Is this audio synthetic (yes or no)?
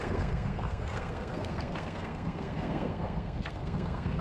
yes